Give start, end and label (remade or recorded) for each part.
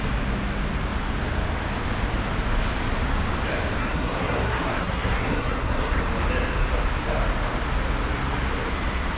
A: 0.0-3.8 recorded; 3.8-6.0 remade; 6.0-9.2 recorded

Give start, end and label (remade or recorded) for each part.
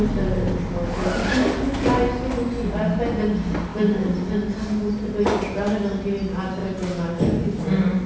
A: 0.0-8.1 recorded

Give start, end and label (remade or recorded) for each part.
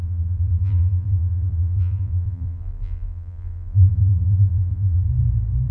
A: 0.0-5.1 remade; 5.1-5.7 recorded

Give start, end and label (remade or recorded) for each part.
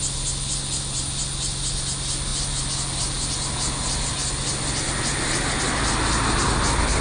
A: 0.0-7.0 recorded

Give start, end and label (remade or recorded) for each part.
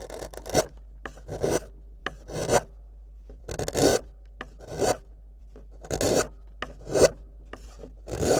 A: 0.0-8.4 recorded